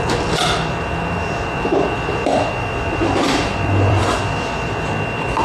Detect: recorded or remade remade